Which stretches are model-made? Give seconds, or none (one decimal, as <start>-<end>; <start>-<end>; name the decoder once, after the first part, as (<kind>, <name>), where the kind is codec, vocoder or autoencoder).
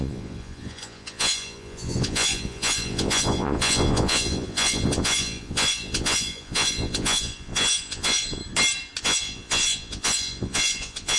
0.0-8.4 (vocoder, Vocos); 9.0-11.2